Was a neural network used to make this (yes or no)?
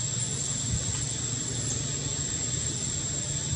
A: no